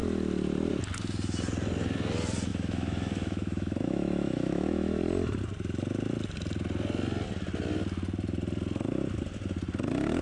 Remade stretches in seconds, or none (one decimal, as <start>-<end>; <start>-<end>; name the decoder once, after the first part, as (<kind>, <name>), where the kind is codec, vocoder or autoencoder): 2.5-5.0 (autoencoder, DAC-VAE)